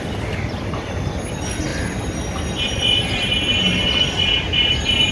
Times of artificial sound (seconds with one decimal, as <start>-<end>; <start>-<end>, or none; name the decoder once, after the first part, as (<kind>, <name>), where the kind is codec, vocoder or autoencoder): none